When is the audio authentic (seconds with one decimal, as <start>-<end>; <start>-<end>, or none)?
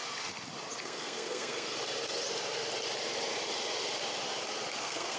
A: 0.0-0.8; 1.7-4.8